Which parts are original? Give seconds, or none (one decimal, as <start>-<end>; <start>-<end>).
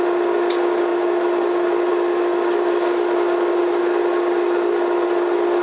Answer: 0.0-5.6